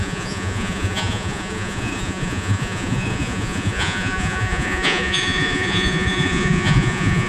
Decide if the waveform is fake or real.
fake